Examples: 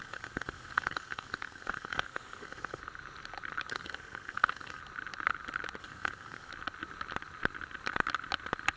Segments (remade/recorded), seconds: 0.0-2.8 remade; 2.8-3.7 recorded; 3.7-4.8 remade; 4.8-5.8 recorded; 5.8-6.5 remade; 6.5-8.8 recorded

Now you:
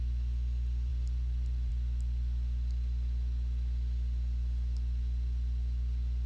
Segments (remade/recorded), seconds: 0.0-0.9 recorded; 0.9-1.7 remade; 1.7-6.3 recorded

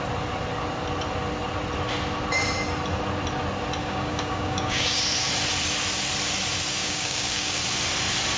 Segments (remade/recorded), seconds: 0.0-3.8 recorded; 3.8-5.0 remade; 5.0-6.8 recorded; 6.8-7.6 remade; 7.6-8.4 recorded